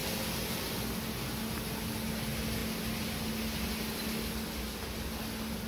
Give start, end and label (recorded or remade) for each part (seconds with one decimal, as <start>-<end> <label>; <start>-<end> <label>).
0.0-5.7 recorded